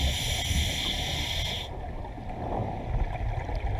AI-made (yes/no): no